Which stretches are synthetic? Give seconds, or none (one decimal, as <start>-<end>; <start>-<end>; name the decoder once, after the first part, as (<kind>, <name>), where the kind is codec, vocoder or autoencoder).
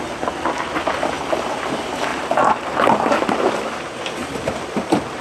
2.1-3.5 (vocoder, BigVGAN v2); 4.2-5.2